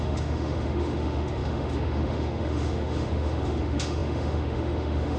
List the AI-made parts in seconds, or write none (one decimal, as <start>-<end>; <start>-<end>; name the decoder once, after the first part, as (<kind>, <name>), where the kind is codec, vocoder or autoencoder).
0.0-5.2 (autoencoder, DAC-VAE)